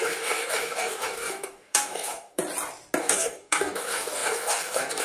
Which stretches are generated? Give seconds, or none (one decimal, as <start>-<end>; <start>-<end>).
0.0-2.4; 3.0-5.0